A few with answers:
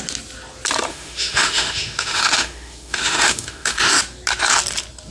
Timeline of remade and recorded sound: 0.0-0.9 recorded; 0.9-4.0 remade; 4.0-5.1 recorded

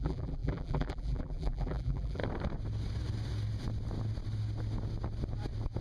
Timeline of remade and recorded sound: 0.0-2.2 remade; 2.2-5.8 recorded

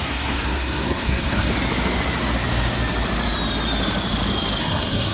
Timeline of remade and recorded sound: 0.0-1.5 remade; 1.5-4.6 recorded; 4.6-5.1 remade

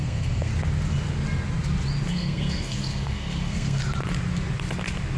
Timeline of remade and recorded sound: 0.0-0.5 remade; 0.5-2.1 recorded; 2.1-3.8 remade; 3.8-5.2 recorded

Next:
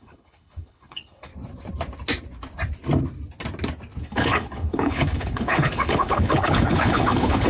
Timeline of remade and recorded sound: 0.0-1.3 remade; 1.3-4.0 recorded; 4.0-7.5 remade

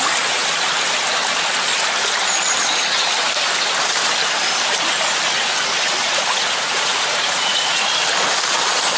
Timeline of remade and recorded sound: 0.0-6.0 recorded; 6.0-7.9 remade; 7.9-9.0 recorded

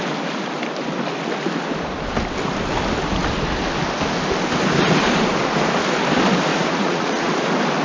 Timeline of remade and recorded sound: 0.0-6.5 recorded; 6.5-7.3 remade; 7.3-7.8 recorded

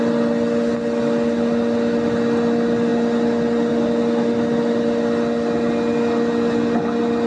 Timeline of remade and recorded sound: 0.0-7.3 recorded